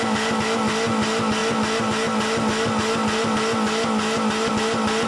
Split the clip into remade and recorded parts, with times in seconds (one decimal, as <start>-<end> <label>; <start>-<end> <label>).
0.0-5.1 recorded